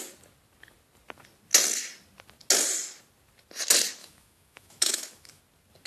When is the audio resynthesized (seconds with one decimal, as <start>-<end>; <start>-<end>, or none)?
4.0-5.4